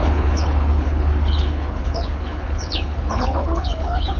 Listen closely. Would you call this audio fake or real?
fake